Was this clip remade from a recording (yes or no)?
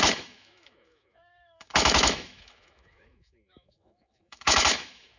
yes